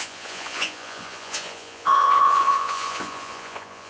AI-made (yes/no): yes